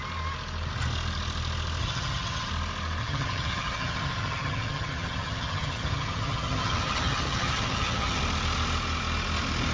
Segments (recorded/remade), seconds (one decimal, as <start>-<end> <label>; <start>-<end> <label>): 0.0-1.8 recorded; 1.8-2.5 remade; 2.5-3.0 recorded; 3.0-8.2 remade; 8.2-9.7 recorded